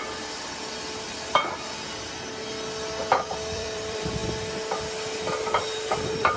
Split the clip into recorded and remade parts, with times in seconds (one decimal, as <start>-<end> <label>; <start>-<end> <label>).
0.0-3.0 recorded; 3.0-4.2 remade; 4.2-5.6 recorded; 5.6-6.4 remade